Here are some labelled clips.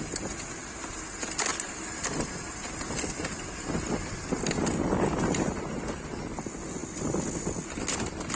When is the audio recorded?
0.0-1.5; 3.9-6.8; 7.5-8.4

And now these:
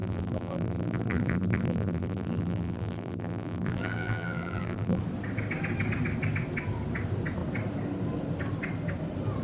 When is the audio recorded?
5.0-9.4

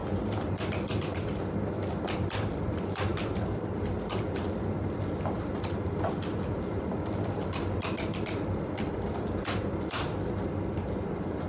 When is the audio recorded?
0.0-1.9

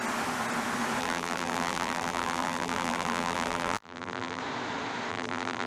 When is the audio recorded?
0.0-1.0; 4.4-5.1

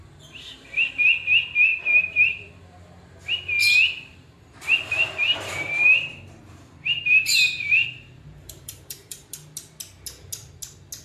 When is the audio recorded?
0.0-1.7; 2.5-4.1; 9.3-11.0